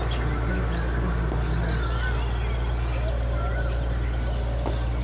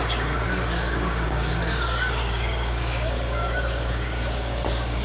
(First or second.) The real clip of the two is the first